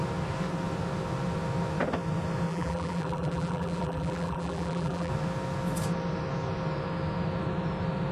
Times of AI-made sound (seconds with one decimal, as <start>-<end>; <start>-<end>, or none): 2.5-5.1